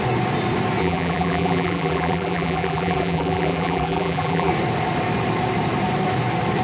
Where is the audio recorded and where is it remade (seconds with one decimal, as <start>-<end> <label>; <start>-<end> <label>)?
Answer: 0.0-0.8 recorded; 0.8-4.5 remade; 4.5-6.6 recorded